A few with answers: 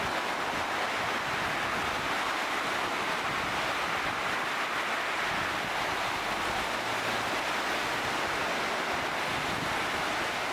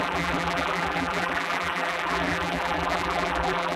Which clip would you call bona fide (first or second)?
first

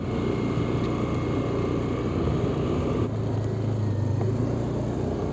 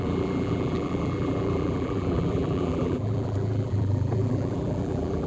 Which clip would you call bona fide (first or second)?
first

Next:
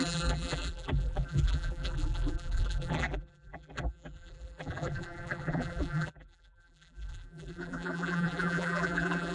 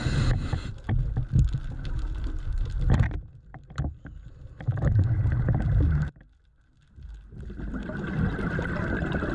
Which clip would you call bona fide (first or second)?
second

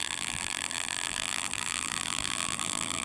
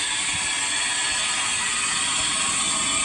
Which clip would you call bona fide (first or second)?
second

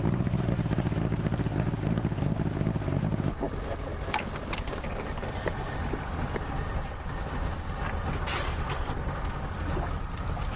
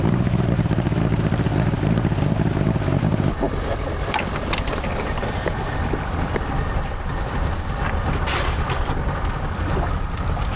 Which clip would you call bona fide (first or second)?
first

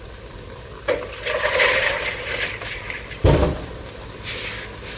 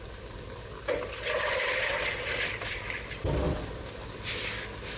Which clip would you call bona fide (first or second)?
second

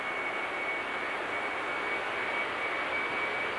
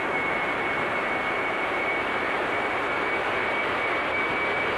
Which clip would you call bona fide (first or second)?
first